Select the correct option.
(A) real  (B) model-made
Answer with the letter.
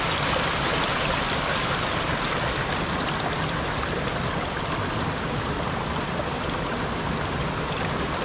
A